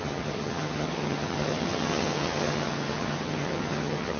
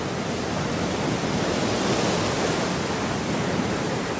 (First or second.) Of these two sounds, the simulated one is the first